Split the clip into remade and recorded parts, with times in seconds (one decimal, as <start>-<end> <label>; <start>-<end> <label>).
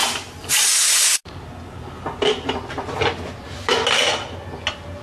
0.0-5.0 recorded